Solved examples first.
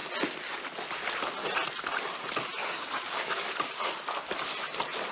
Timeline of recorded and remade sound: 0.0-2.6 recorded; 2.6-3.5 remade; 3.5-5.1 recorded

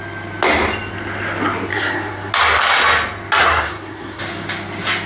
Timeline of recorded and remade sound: 0.0-1.7 recorded; 1.7-2.3 remade; 2.3-3.4 recorded; 3.4-4.2 remade; 4.2-5.1 recorded